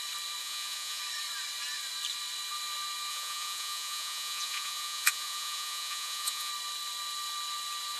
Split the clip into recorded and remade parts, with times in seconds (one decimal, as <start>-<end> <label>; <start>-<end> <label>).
0.0-0.4 recorded; 0.4-1.0 remade; 1.0-3.1 recorded; 3.1-6.5 remade; 6.5-8.0 recorded